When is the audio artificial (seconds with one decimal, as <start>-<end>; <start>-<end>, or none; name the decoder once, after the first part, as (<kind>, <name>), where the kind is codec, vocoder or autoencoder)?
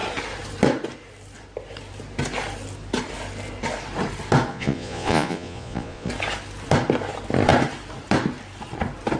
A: 4.5-6.1 (vocoder, Vocos)